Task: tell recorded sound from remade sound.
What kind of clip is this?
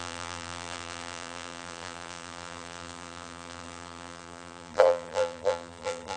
remade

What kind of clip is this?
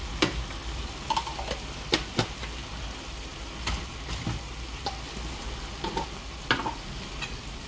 recorded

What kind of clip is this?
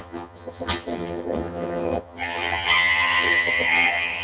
remade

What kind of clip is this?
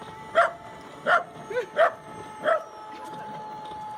recorded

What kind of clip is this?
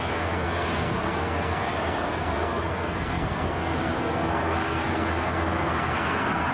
remade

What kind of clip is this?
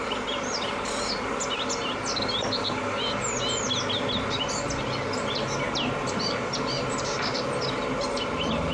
recorded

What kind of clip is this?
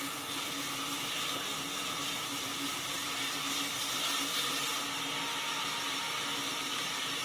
recorded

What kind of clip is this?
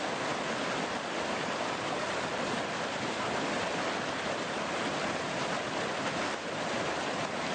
recorded